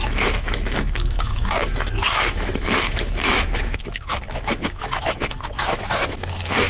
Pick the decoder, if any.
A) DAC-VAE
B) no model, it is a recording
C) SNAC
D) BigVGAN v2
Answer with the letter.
A